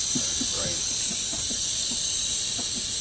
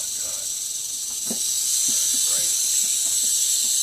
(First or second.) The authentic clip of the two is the second